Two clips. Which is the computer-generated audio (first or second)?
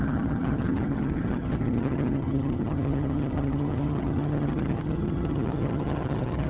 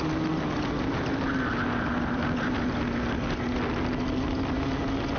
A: first